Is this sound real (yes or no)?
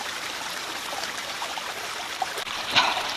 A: no